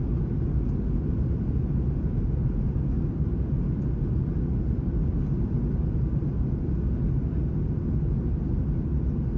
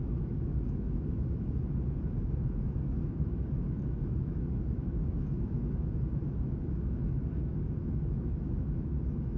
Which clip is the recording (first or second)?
first